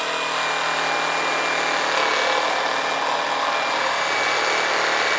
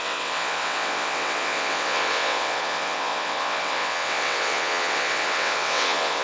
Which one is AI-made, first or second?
second